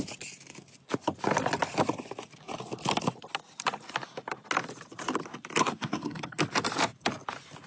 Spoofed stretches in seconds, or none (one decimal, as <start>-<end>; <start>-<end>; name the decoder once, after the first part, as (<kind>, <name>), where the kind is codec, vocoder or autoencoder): 5.6-6.4 (codec, SNAC)